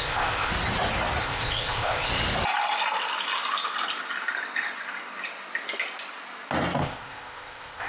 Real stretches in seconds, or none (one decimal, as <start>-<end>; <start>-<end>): 0.5-1.2; 2.1-6.8